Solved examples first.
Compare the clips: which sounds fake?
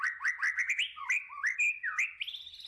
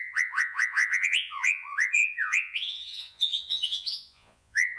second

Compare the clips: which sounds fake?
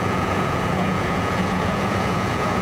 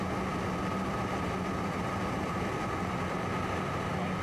first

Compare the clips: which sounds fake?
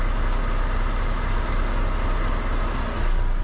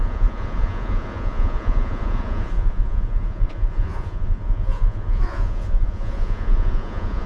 second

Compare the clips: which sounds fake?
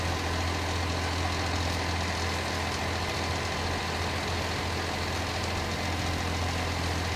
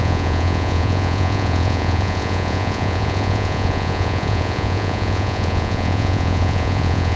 second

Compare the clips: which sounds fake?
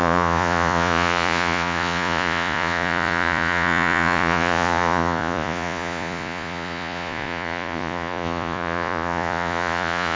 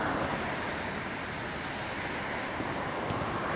first